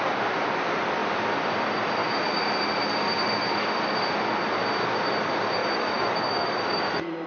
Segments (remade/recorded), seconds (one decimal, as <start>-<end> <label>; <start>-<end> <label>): 0.0-5.6 recorded; 5.6-7.3 remade